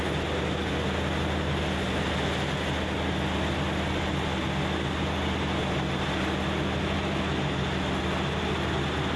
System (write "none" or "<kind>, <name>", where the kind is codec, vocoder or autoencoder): none